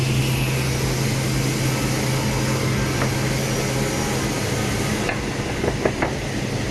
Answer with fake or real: real